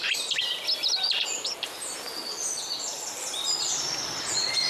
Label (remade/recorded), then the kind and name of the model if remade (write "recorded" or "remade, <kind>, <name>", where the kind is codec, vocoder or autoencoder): recorded